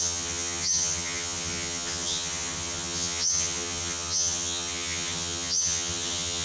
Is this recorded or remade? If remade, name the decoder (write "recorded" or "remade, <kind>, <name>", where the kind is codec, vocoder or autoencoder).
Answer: remade, vocoder, HiFi-GAN